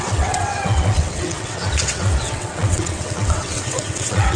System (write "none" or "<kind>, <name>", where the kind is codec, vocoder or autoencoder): vocoder, WaveNeXt